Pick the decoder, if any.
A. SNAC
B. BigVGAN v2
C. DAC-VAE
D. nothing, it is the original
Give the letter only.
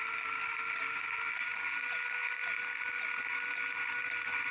D